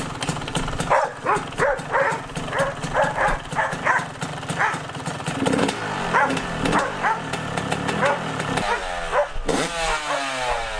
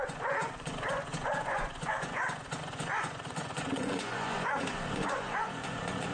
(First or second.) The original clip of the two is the first